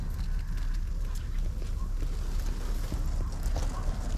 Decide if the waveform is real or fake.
real